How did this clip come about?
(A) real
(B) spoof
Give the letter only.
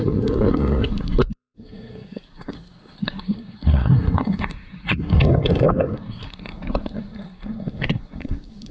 B